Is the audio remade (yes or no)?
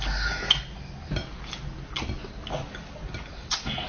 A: no